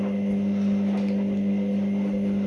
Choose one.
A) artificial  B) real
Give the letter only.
B